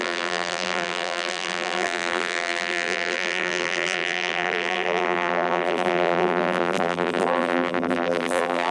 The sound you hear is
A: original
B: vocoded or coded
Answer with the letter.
B